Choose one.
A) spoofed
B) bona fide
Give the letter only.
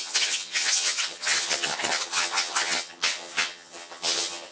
A